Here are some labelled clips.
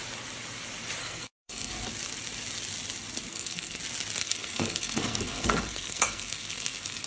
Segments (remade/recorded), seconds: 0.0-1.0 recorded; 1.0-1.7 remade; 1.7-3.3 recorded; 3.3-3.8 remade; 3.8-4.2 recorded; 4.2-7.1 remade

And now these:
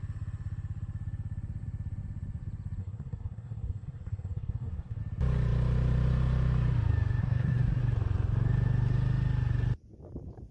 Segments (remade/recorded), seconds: 0.0-2.8 recorded; 2.8-5.0 remade; 5.0-7.2 recorded; 7.2-7.8 remade; 7.8-10.5 recorded

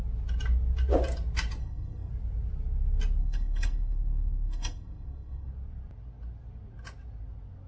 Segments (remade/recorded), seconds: 0.0-1.6 recorded; 1.6-2.1 remade; 2.1-3.2 recorded; 3.2-5.5 remade; 5.5-7.7 recorded

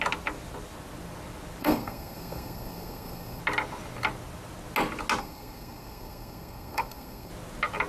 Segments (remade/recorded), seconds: 0.0-1.6 recorded; 1.6-3.4 remade; 3.4-5.2 recorded; 5.2-7.3 remade; 7.3-7.9 recorded

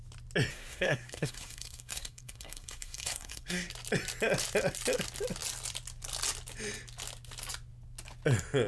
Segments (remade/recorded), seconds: 0.0-0.5 recorded; 0.5-3.7 remade; 3.7-8.7 recorded

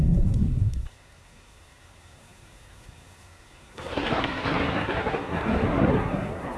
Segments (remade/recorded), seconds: 0.0-6.6 remade

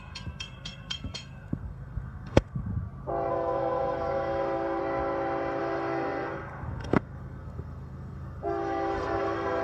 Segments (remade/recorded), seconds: 0.0-2.7 remade; 2.7-3.3 recorded; 3.3-4.8 remade; 4.8-5.6 recorded; 5.6-9.6 remade

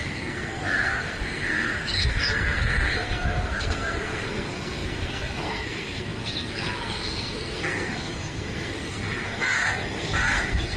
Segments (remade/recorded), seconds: 0.0-10.8 remade